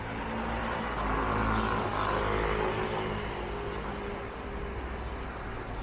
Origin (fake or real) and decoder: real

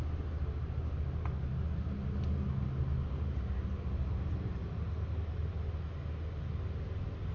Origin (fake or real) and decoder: real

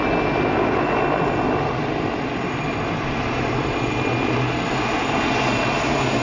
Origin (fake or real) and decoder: real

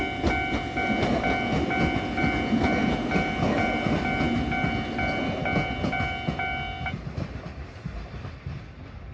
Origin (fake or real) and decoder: real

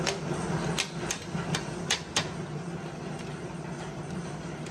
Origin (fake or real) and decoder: real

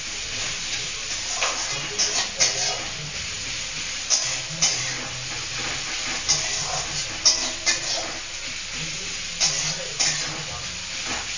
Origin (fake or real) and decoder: real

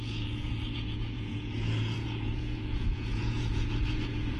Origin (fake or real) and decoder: fake, vocoder, Vocos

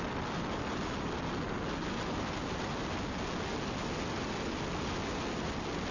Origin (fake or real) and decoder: real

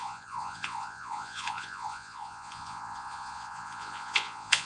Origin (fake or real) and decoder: fake, vocoder, Vocos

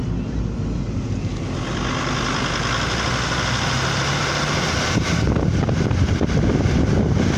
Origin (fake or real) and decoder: real